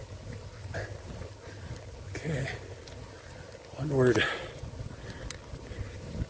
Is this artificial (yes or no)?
no